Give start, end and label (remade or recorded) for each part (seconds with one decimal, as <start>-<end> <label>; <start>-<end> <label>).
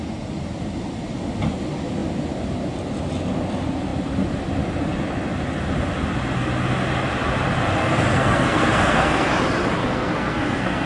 0.0-7.8 recorded; 7.8-9.3 remade; 9.3-9.8 recorded; 9.8-10.9 remade